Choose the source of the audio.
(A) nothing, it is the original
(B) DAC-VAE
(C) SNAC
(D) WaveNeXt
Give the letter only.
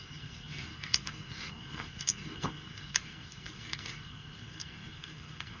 C